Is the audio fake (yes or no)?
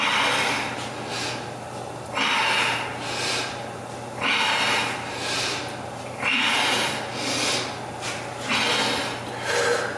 no